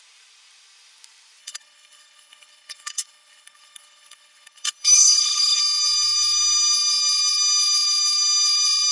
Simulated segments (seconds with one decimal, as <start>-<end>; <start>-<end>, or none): 1.4-5.6